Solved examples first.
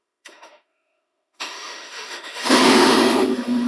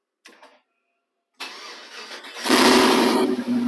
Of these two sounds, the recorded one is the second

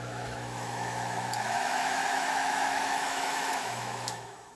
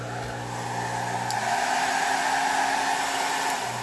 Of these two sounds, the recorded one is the second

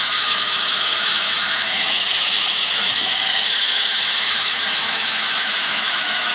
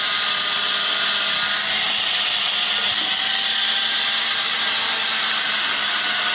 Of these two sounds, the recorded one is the second